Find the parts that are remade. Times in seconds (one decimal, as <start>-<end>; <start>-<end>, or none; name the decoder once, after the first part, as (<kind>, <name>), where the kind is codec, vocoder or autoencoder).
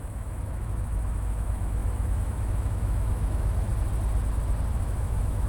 0.0-3.7 (autoencoder, DAC-VAE); 4.7-5.5